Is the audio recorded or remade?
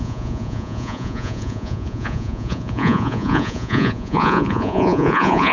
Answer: remade